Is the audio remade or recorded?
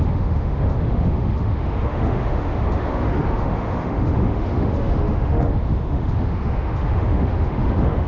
remade